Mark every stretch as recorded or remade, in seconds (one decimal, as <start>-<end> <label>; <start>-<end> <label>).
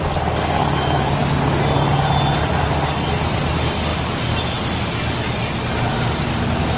0.0-6.8 recorded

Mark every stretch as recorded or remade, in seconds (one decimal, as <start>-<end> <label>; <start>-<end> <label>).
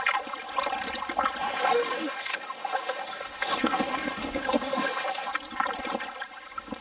0.0-1.4 recorded; 1.4-5.3 remade; 5.3-6.8 recorded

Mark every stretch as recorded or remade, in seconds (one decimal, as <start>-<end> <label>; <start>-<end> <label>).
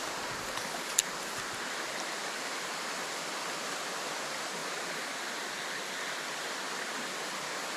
0.0-7.8 recorded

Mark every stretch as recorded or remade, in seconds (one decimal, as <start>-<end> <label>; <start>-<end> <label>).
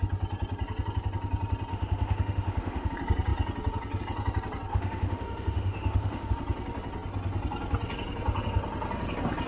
0.0-1.7 recorded; 1.7-2.9 remade; 2.9-4.7 recorded; 4.7-6.3 remade; 6.3-9.5 recorded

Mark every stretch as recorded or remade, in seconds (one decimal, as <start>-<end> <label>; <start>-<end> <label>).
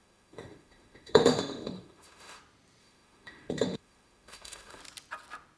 0.0-2.4 remade; 2.4-2.8 recorded; 2.8-4.8 remade; 4.8-5.6 recorded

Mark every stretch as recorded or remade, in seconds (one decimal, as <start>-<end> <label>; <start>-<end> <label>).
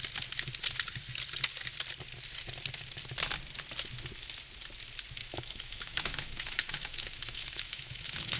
0.0-5.2 recorded; 5.2-8.4 remade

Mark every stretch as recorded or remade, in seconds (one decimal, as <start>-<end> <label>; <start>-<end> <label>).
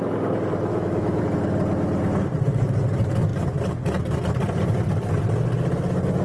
0.0-0.7 recorded; 0.7-1.2 remade; 1.2-6.2 recorded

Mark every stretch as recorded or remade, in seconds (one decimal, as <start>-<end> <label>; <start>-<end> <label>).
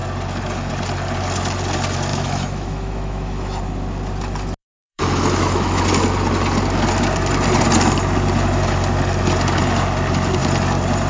0.0-2.1 recorded; 2.1-3.6 remade; 3.6-4.6 recorded; 4.6-5.8 remade; 5.8-11.1 recorded